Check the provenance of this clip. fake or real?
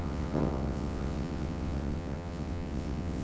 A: fake